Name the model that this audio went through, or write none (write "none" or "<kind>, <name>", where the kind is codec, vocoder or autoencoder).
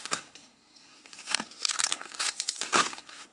codec, SNAC